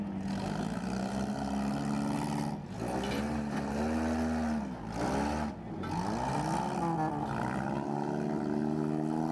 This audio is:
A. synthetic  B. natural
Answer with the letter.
B